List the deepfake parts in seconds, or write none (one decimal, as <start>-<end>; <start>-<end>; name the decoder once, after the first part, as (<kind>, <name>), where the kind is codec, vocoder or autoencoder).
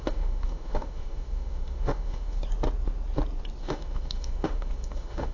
0.0-2.4 (autoencoder, DAC-VAE); 3.6-5.3